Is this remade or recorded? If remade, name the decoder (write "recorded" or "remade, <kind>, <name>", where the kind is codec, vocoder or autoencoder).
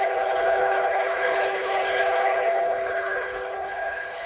remade, codec, HILCodec